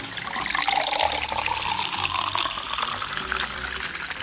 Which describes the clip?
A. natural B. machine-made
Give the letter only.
A